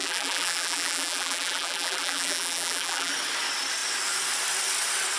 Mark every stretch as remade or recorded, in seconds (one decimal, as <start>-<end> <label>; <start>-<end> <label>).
0.0-3.1 remade; 3.1-5.2 recorded